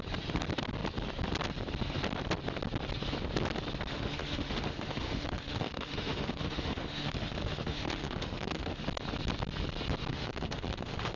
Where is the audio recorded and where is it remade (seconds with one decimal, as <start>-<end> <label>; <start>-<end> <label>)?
0.0-3.9 recorded; 3.9-8.8 remade; 8.8-10.1 recorded; 10.1-11.2 remade